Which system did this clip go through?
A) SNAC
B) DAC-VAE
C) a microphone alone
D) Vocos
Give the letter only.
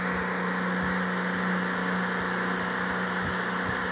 C